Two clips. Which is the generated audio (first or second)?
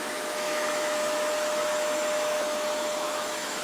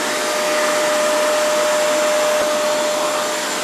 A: first